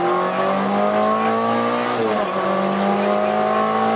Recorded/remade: recorded